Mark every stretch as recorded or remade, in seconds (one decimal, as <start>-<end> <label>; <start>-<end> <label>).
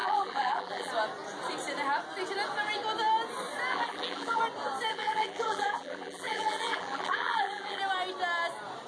0.0-0.9 remade; 0.9-3.7 recorded; 3.7-4.4 remade; 4.4-4.9 recorded; 4.9-7.8 remade; 7.8-8.9 recorded